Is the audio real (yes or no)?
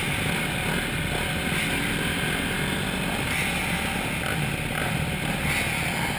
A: yes